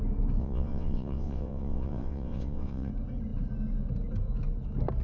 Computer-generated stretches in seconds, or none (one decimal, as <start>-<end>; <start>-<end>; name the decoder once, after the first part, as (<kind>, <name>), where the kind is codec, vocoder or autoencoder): 0.4-2.9 (vocoder, WaveNeXt)